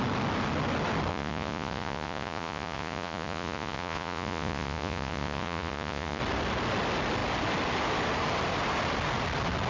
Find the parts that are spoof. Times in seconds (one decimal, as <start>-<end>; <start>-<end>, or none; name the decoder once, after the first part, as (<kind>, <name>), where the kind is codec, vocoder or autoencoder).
1.1-6.2 (vocoder, Vocos)